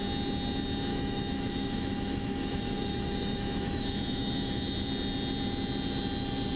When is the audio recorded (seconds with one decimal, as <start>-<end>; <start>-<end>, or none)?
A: 0.0-0.9; 4.9-6.6